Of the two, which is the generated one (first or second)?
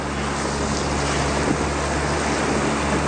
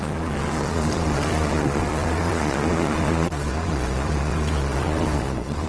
second